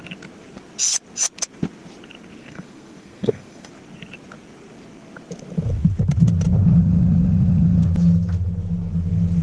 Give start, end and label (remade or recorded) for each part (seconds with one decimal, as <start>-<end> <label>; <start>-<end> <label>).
0.0-2.4 recorded; 2.4-3.7 remade; 3.7-9.4 recorded